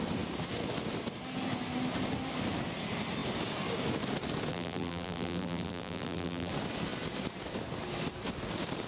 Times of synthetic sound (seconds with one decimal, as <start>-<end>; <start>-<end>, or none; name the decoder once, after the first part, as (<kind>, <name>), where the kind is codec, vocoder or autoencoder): 4.5-6.5 (vocoder, BigVGAN v2)